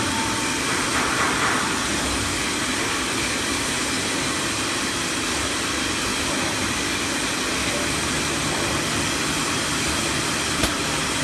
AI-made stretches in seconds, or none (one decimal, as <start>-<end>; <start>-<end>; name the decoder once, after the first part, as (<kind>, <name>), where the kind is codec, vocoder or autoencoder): none